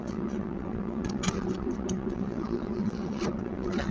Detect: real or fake fake